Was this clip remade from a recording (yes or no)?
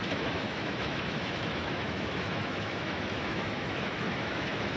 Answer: yes